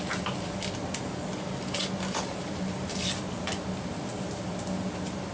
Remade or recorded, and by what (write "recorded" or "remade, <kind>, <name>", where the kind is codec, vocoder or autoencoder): recorded